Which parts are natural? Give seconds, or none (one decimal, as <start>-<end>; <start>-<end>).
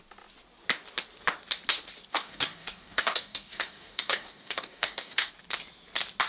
0.0-2.1; 5.3-6.3